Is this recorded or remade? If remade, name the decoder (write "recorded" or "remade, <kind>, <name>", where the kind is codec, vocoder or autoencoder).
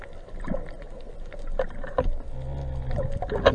recorded